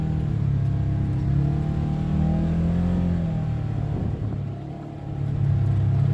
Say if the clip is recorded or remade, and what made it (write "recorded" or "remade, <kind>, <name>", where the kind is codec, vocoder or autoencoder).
recorded